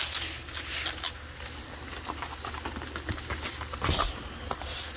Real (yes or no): yes